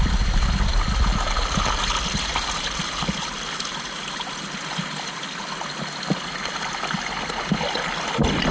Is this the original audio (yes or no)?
yes